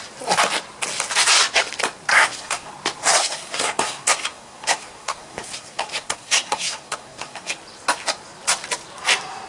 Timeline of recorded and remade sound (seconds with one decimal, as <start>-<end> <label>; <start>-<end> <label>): 0.0-2.1 recorded; 2.1-2.7 remade; 2.7-3.2 recorded; 3.2-7.5 remade; 7.5-9.5 recorded